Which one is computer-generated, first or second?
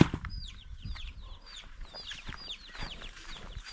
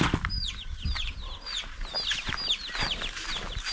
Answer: first